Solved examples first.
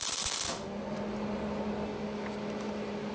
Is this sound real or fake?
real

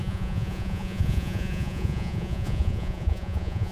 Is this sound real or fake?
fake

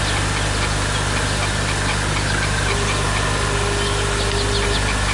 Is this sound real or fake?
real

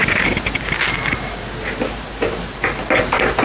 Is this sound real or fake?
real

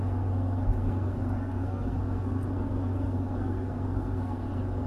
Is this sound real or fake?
fake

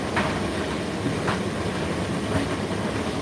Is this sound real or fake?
real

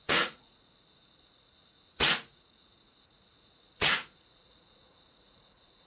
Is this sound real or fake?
fake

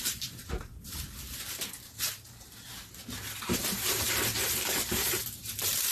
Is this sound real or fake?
fake